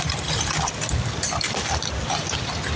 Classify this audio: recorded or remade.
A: recorded